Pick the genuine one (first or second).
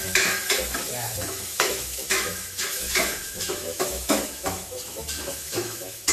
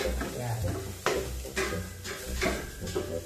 second